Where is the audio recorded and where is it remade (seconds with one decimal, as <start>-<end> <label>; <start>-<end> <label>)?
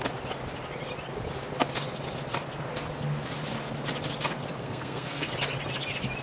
0.0-4.6 recorded; 4.6-5.3 remade; 5.3-6.2 recorded